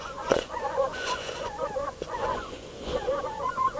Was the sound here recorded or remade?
remade